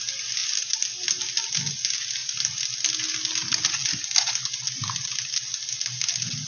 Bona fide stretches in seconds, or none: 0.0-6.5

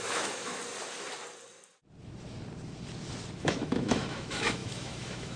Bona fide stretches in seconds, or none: 0.6-3.4

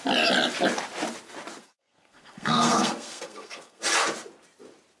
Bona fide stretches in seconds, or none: 0.0-1.6; 3.8-5.0

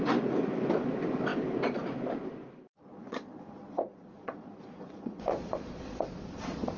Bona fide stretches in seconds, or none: 0.0-2.9

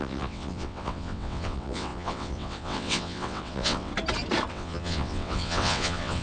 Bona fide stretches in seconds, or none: 3.9-4.5